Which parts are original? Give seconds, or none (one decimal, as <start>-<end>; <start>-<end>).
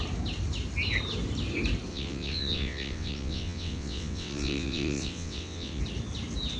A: 0.0-1.9; 5.8-6.6